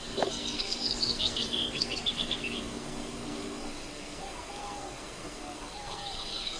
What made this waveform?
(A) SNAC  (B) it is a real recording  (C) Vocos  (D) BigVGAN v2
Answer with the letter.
A